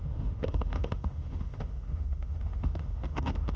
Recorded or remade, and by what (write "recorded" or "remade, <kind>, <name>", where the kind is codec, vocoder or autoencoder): remade, autoencoder, DAC-VAE